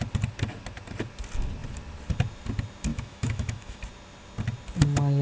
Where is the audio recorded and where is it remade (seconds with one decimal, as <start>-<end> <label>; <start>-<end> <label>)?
0.0-2.9 recorded; 2.9-3.8 remade; 3.8-5.2 recorded